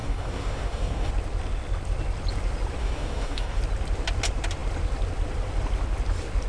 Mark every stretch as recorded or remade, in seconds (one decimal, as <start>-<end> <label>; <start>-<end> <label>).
0.0-1.1 remade; 1.1-2.8 recorded; 2.8-3.6 remade; 3.6-6.5 recorded

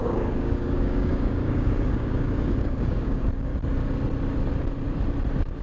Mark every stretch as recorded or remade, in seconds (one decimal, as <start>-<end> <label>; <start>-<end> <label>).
0.0-3.5 remade; 3.5-5.6 recorded

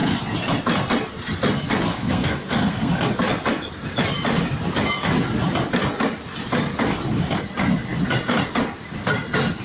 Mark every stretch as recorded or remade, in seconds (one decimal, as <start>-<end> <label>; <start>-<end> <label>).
0.0-1.9 recorded; 1.9-2.9 remade; 2.9-9.6 recorded

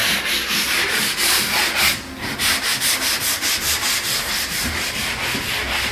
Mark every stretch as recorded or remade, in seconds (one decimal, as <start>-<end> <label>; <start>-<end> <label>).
0.0-5.9 recorded

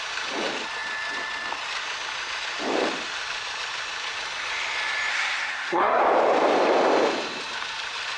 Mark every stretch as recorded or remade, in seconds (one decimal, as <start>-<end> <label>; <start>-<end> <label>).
0.0-5.1 recorded; 5.1-6.0 remade; 6.0-8.2 recorded